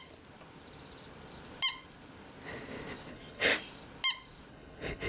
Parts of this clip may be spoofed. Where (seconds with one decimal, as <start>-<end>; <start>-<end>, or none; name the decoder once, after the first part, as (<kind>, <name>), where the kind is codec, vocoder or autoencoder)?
3.1-3.5 (codec, HILCodec); 4.5-5.1